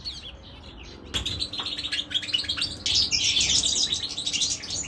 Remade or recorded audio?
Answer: recorded